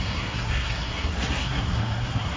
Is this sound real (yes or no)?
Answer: no